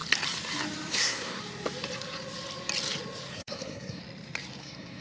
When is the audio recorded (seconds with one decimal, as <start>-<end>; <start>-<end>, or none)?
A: 0.0-0.9; 1.4-3.3; 4.0-4.6

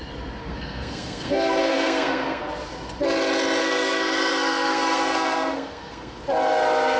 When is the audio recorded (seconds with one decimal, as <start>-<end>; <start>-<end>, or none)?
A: 0.0-0.4; 2.4-3.6; 6.2-7.0